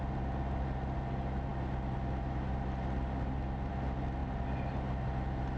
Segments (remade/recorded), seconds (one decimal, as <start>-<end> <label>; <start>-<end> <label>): 0.0-5.6 recorded